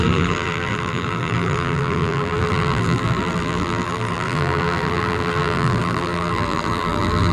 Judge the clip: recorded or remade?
remade